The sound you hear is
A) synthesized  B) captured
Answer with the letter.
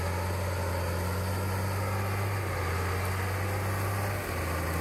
B